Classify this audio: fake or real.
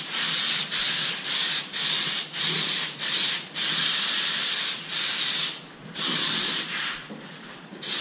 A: fake